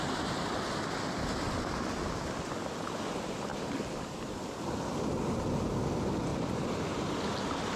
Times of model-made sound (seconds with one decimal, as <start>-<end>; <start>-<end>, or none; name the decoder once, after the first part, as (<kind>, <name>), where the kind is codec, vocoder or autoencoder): 3.5-4.2 (vocoder, BigVGAN v2); 6.3-7.8